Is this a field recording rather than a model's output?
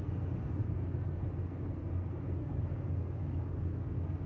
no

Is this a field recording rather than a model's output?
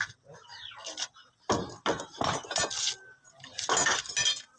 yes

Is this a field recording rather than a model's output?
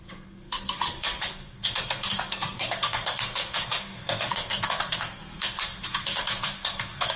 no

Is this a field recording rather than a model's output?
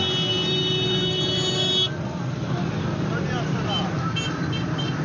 yes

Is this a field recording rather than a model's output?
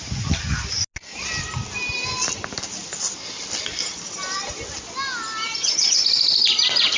yes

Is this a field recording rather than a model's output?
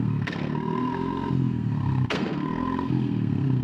no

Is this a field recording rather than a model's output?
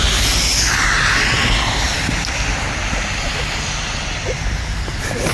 yes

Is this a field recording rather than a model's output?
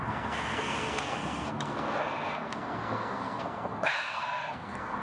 no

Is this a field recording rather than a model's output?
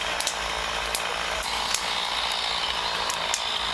yes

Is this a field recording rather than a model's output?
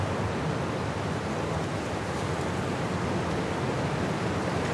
yes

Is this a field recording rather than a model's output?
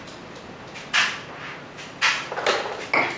yes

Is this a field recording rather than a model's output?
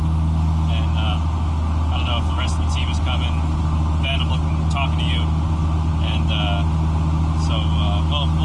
yes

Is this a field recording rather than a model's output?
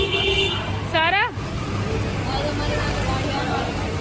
yes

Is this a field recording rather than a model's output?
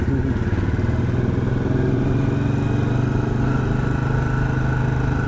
yes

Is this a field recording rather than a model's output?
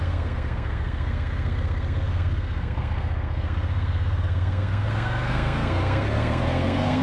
no